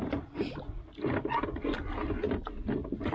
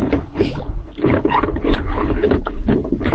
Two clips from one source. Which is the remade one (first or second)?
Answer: second